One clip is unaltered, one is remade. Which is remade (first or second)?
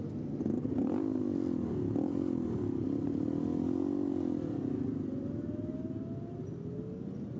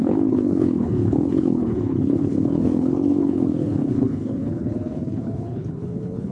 second